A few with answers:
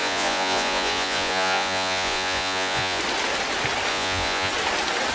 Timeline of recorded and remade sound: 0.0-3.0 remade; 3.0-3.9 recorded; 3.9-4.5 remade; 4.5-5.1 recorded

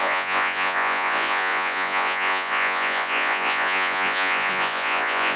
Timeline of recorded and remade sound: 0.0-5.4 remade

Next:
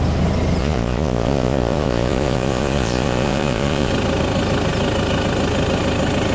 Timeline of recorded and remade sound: 0.0-0.6 recorded; 0.6-3.9 remade; 3.9-6.3 recorded